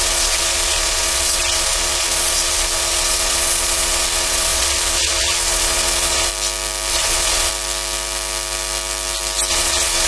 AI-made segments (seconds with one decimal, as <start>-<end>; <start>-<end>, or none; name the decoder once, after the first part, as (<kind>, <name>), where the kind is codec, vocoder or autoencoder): 0.0-6.3 (vocoder, Vocos); 6.9-7.5; 9.5-10.1